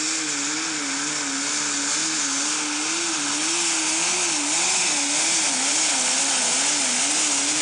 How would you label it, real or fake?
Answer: real